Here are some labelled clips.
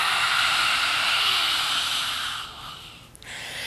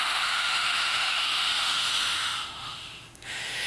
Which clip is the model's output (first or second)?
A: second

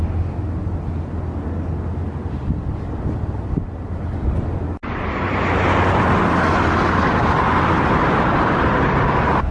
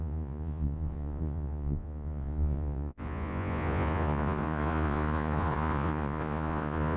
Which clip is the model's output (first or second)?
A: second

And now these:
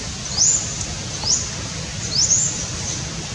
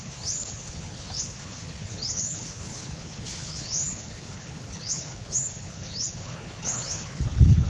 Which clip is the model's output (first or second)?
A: second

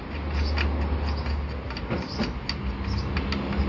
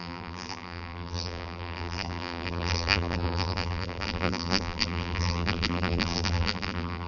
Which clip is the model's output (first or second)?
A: second